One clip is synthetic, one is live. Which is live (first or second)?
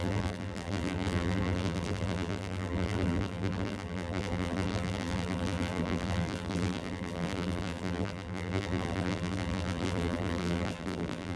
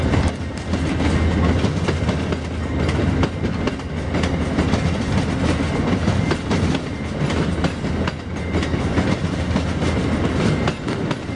second